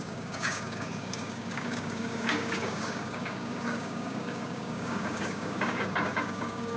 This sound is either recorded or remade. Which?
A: remade